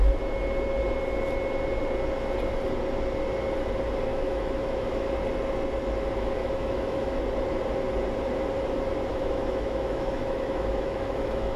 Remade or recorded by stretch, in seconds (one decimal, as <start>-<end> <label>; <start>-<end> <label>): 0.0-4.1 recorded; 4.1-5.1 remade; 5.1-6.4 recorded; 6.4-7.2 remade; 7.2-9.1 recorded; 9.1-11.6 remade